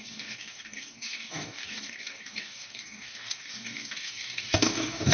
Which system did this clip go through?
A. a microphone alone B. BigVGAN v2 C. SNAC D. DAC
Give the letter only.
D